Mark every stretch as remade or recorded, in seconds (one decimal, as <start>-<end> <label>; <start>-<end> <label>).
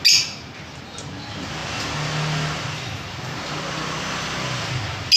0.0-5.2 recorded